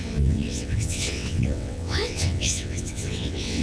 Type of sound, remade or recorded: remade